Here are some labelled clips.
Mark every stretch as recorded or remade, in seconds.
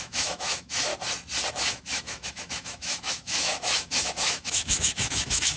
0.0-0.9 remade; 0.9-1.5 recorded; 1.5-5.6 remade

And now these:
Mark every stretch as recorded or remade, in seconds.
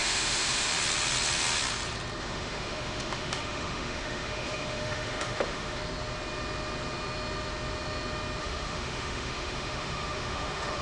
0.0-0.7 remade; 0.7-2.2 recorded; 2.2-5.8 remade; 5.8-8.4 recorded; 8.4-10.8 remade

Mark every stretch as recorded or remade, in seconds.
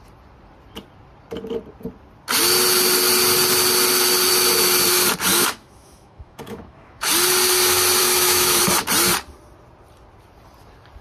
0.0-5.3 recorded; 5.3-7.1 remade; 7.1-8.0 recorded; 8.0-8.6 remade; 8.6-11.0 recorded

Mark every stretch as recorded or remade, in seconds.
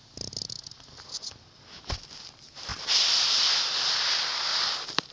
0.0-5.1 recorded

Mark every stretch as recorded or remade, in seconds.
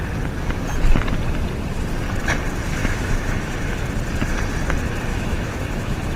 0.0-2.8 recorded; 2.8-3.8 remade; 3.8-5.1 recorded; 5.1-6.2 remade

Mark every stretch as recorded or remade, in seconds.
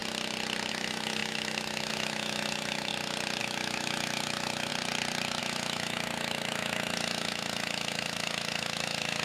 0.0-0.7 recorded; 0.7-2.9 remade; 2.9-3.4 recorded; 3.4-4.7 remade; 4.7-5.4 recorded; 5.4-9.2 remade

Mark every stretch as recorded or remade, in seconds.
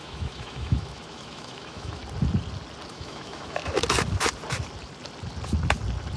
0.0-2.0 remade; 2.0-2.9 recorded; 2.9-3.6 remade; 3.6-6.2 recorded